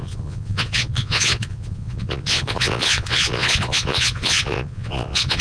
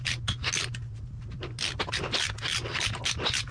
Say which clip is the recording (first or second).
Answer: second